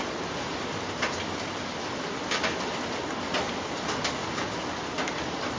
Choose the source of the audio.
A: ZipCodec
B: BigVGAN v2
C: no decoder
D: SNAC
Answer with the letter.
C